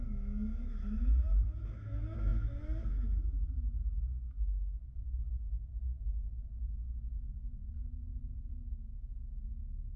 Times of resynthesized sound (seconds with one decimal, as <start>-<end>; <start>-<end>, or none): 0.0-5.7; 7.0-8.1; 8.9-9.5